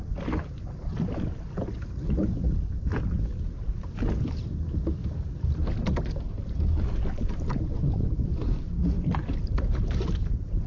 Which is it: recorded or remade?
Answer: recorded